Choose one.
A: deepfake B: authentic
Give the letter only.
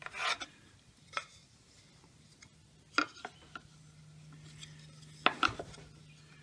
B